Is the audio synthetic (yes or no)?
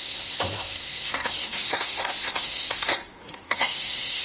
yes